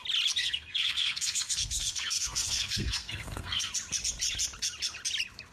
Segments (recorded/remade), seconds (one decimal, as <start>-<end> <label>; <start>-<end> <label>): 0.0-0.4 recorded; 0.4-3.7 remade; 3.7-5.5 recorded